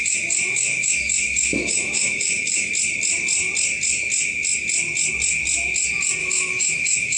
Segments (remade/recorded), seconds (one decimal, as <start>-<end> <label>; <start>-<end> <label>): 0.0-2.7 remade; 2.7-6.2 recorded; 6.2-7.2 remade